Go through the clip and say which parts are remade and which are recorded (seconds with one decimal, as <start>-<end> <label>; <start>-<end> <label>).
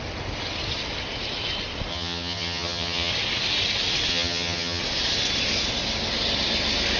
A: 0.0-1.9 recorded; 1.9-3.1 remade; 3.1-4.1 recorded; 4.1-4.8 remade; 4.8-7.0 recorded